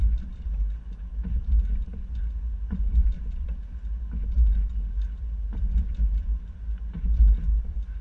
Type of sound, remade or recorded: remade